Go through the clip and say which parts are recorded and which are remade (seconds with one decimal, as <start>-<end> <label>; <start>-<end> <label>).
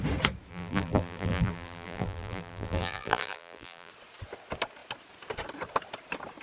0.0-0.5 recorded; 0.5-3.9 remade; 3.9-6.4 recorded